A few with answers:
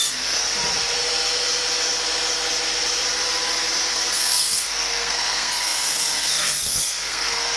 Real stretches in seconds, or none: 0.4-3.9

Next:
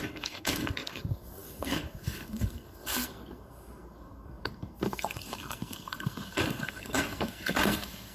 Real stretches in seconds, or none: none

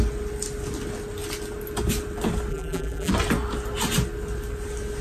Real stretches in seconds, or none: 0.0-2.5; 3.1-5.0